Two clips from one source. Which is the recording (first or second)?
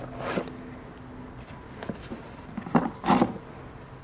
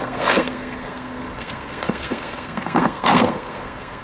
first